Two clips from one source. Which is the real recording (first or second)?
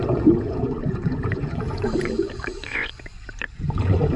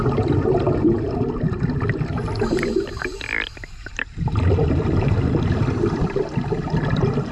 second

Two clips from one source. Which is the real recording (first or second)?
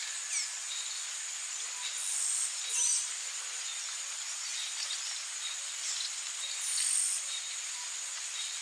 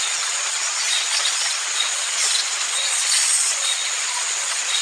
first